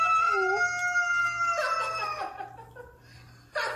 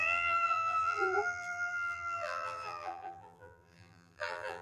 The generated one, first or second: second